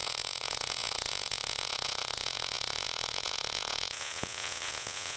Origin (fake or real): fake